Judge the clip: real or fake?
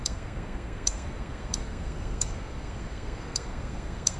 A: fake